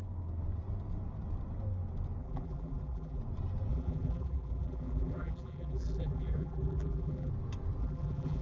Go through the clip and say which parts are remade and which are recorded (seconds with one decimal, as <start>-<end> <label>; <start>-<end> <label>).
0.0-2.2 recorded; 2.2-3.2 remade; 3.2-3.7 recorded; 3.7-7.3 remade; 7.3-7.8 recorded; 7.8-8.4 remade